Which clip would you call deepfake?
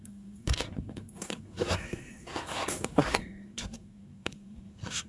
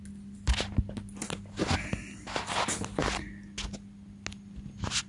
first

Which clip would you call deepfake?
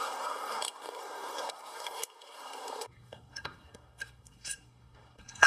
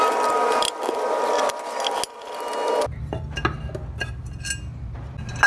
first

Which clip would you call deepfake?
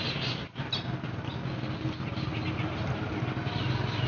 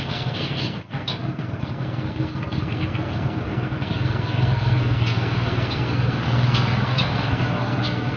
second